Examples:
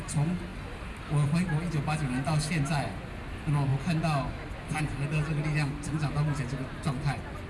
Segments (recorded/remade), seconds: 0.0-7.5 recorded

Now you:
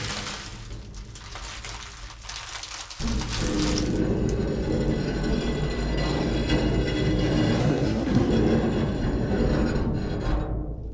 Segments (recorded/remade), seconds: 0.0-7.6 recorded; 7.6-8.3 remade; 8.3-10.9 recorded